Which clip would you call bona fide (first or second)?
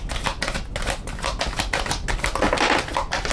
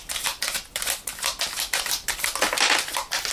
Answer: first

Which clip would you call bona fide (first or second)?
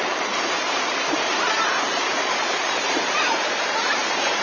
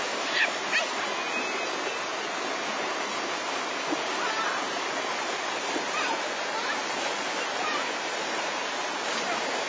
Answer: second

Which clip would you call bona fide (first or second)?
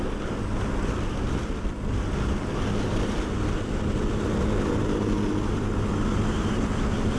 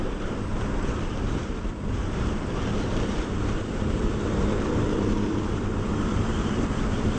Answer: first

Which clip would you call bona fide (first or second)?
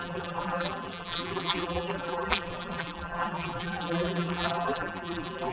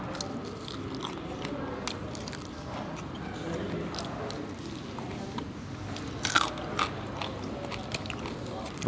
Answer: second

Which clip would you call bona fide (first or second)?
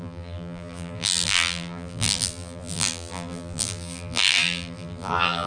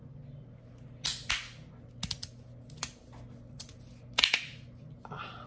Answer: second